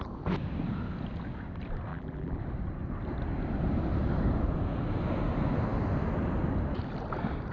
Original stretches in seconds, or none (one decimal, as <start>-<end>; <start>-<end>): 0.0-1.9; 2.4-7.5